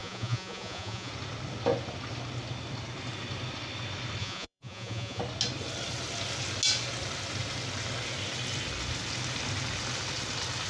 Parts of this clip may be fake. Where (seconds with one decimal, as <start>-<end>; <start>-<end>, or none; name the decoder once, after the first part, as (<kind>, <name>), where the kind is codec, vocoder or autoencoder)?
0.0-1.1 (vocoder, Vocos); 4.2-5.2